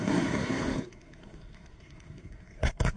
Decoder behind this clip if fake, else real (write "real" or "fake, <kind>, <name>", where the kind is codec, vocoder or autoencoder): fake, codec, SNAC